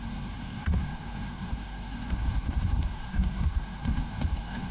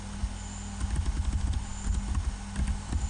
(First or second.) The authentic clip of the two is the second